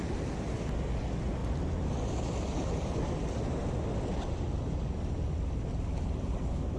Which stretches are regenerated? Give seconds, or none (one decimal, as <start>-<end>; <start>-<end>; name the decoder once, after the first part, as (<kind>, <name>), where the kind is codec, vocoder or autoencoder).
none